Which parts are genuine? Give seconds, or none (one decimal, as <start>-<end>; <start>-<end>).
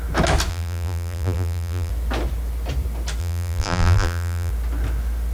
0.0-0.5; 1.9-3.2; 4.5-5.3